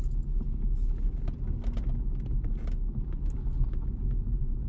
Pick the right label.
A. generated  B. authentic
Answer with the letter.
B